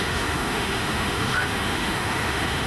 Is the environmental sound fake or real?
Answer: fake